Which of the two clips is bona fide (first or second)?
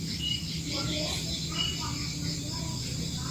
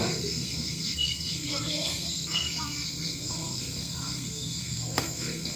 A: first